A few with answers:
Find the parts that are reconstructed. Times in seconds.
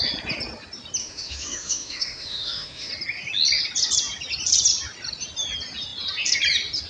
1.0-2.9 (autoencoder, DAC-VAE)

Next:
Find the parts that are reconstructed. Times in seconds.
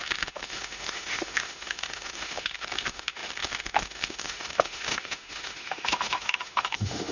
0.0-7.1 (autoencoder, DAC-VAE)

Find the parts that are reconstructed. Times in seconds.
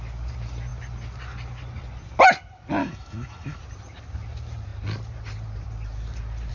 2.8-3.6 (autoencoder, DAC-VAE)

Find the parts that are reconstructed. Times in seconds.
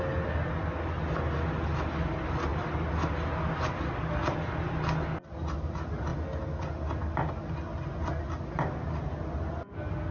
none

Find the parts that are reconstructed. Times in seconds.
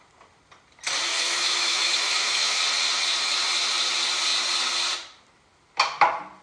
1.1-2.6 (autoencoder, DAC-VAE)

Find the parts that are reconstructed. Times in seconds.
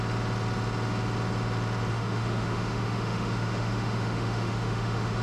1.9-5.2 (autoencoder, DAC-VAE)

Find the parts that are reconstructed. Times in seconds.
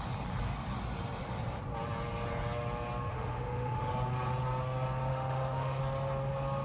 3.1-3.9 (autoencoder, DAC-VAE); 5.1-5.8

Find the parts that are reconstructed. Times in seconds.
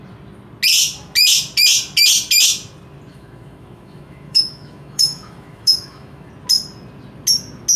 3.1-6.3 (autoencoder, DAC-VAE)